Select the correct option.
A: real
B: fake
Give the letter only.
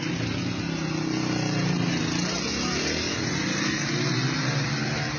A